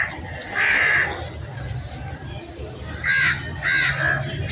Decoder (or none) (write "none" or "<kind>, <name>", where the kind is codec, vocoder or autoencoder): none